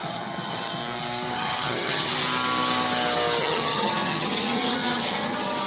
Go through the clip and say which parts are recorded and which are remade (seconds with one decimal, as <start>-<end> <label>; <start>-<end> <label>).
0.0-0.8 remade; 0.8-1.3 recorded; 1.3-2.1 remade; 2.1-3.4 recorded; 3.4-5.7 remade